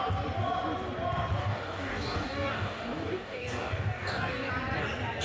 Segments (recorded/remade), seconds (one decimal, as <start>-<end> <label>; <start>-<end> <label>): 0.0-1.4 recorded; 1.4-4.5 remade; 4.5-5.2 recorded